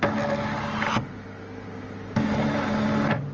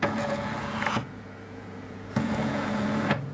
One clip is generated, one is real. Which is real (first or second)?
first